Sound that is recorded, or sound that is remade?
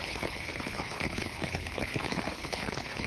remade